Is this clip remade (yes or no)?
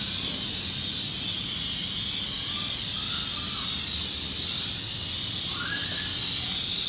no